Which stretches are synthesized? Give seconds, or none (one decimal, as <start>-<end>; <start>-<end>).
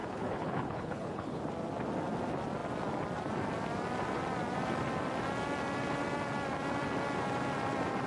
0.0-1.4